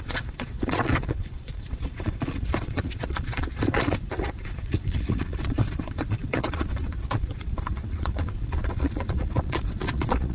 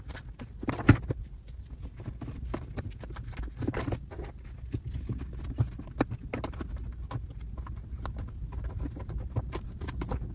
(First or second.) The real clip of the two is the second